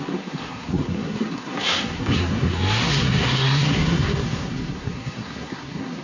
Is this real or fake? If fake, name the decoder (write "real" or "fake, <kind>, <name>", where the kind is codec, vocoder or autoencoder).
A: fake, codec, SNAC